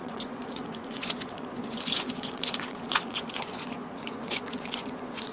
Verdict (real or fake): fake